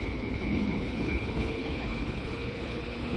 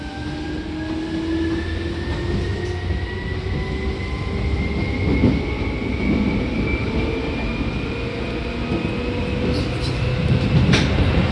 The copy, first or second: first